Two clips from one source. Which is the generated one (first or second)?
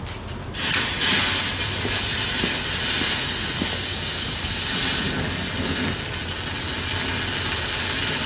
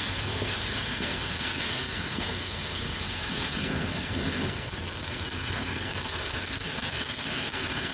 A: second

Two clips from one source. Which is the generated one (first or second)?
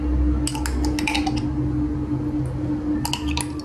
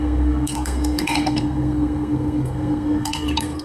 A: second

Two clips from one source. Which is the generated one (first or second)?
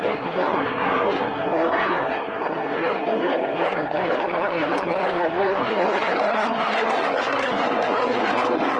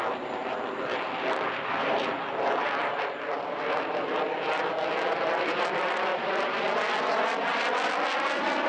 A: first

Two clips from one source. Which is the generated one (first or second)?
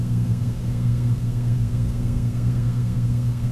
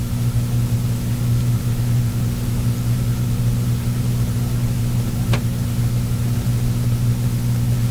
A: first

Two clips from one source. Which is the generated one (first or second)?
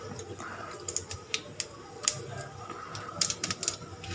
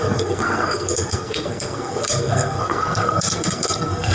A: second